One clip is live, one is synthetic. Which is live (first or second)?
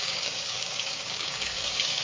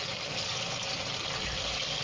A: second